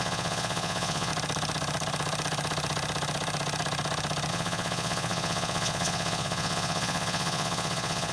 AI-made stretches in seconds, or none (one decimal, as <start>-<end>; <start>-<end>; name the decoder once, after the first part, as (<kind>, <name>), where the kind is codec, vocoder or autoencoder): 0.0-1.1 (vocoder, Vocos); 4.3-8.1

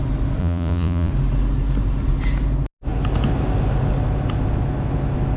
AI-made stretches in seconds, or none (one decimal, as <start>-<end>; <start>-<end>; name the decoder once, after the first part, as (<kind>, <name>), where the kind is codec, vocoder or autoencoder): 0.4-1.1 (vocoder, Vocos)

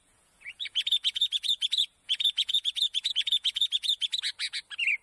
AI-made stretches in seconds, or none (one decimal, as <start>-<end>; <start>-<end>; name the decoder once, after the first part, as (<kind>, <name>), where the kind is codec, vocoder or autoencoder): 0.0-4.1 (vocoder, Vocos)